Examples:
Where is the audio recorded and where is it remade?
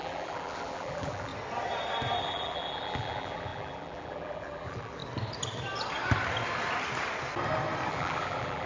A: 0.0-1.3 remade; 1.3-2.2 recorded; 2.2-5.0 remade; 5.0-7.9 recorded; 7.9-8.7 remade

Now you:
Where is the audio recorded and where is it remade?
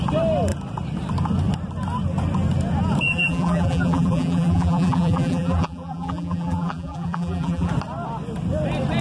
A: 0.0-3.1 recorded; 3.1-7.7 remade; 7.7-9.0 recorded